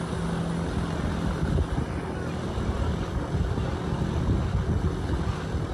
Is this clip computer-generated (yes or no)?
no